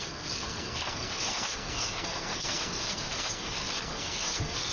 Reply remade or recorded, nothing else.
remade